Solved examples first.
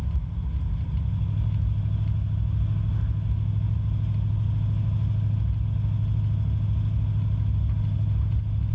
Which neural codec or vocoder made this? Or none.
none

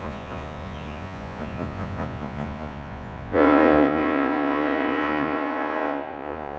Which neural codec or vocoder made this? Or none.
vocoder, Vocos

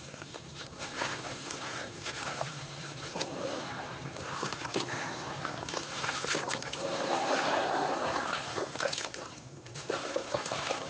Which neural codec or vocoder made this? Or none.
codec, SNAC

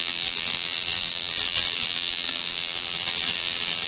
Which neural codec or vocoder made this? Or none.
vocoder, BigVGAN v2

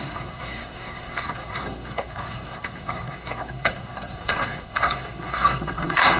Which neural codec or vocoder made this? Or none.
codec, SNAC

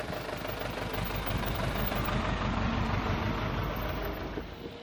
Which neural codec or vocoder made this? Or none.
none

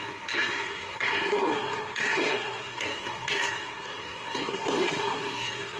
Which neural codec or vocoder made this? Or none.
codec, SNAC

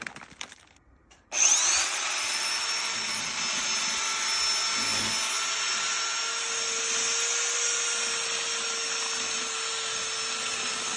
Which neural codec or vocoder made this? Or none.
none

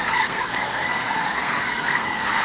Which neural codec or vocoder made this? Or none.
codec, SNAC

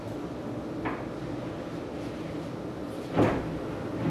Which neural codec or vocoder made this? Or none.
none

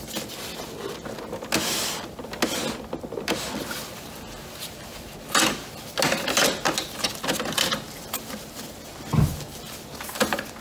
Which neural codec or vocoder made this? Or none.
none